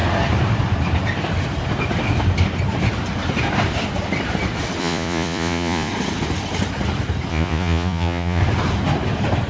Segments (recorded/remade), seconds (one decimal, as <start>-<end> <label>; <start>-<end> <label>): 0.0-4.8 recorded; 4.8-5.9 remade; 5.9-7.3 recorded; 7.3-8.4 remade; 8.4-9.5 recorded